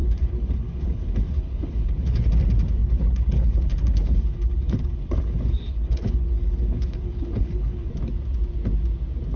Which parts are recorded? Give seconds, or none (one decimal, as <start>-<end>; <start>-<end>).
2.3-2.8; 7.9-9.4